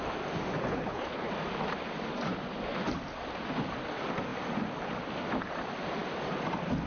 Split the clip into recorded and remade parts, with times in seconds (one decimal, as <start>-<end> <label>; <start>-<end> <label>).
0.0-0.6 recorded; 0.6-1.3 remade; 1.3-6.9 recorded